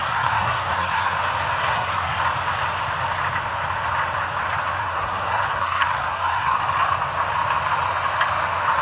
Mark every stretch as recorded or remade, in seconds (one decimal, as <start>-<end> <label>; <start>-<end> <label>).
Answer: 0.0-1.2 remade; 1.2-1.6 recorded; 1.6-2.2 remade; 2.2-4.8 recorded; 4.8-6.6 remade; 6.6-8.8 recorded